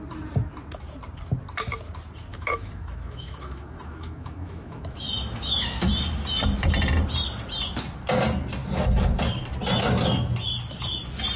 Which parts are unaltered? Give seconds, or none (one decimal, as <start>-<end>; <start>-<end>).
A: 0.0-2.3; 5.9-11.4